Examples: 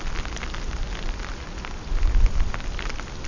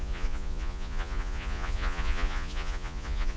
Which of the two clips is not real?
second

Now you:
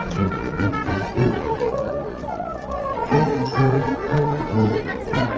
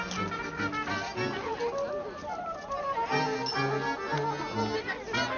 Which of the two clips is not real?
first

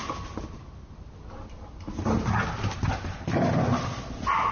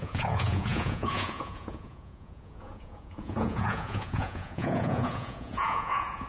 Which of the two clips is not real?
second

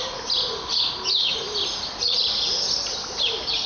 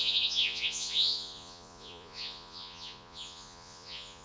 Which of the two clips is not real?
second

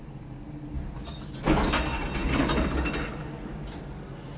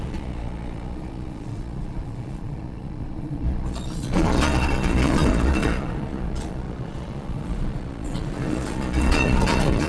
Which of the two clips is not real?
second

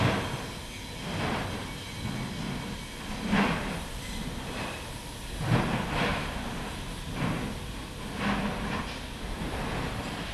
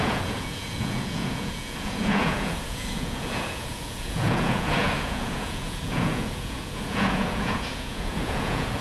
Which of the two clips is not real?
second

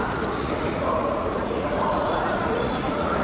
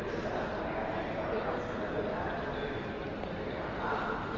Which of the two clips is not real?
first